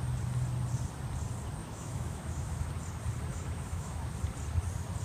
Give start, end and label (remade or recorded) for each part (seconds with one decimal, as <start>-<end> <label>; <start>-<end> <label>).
0.0-1.6 recorded; 1.6-2.7 remade; 2.7-3.3 recorded; 3.3-4.1 remade; 4.1-5.0 recorded